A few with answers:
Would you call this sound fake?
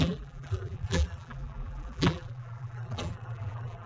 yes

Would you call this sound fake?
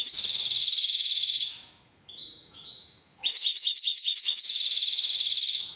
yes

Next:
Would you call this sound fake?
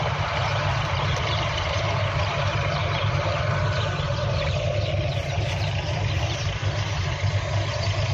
yes